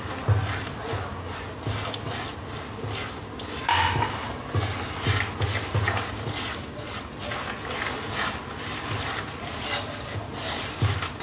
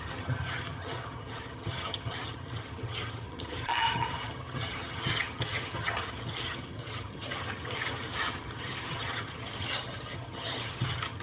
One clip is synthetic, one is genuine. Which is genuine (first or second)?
first